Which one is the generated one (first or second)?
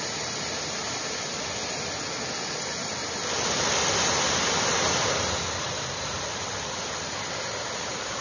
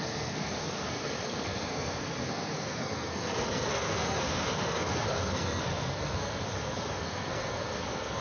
second